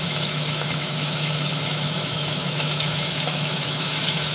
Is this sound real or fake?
fake